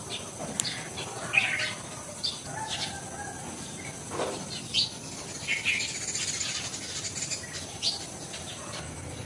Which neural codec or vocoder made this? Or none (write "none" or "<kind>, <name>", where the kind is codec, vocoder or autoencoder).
none